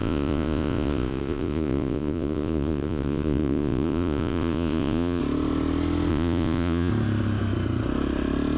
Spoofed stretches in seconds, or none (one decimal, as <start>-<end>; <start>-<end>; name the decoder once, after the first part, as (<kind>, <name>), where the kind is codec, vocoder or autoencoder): 0.0-5.2 (vocoder, Vocos); 6.1-6.9